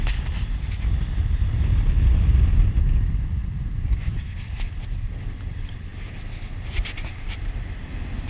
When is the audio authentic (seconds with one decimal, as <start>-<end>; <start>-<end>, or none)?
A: 0.0-8.3